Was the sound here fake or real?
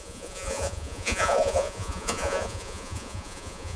fake